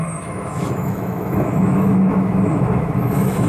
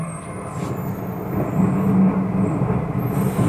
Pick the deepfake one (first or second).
first